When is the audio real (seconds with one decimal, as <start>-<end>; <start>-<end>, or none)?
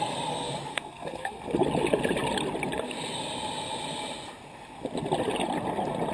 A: 0.0-0.7; 1.4-6.1